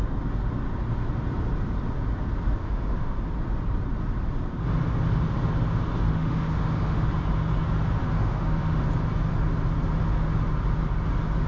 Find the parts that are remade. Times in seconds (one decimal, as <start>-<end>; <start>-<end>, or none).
2.6-3.2; 6.1-7.1; 8.0-8.8